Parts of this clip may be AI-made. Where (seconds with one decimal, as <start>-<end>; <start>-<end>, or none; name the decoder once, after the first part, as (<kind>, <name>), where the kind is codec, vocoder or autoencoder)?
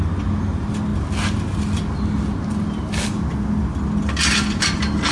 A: none